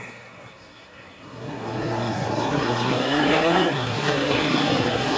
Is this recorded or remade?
remade